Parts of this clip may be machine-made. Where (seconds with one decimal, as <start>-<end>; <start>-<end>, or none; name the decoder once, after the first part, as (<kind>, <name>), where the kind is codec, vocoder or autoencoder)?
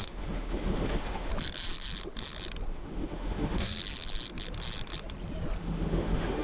0.0-1.3 (autoencoder, DAC-VAE); 2.7-3.8; 5.6-6.4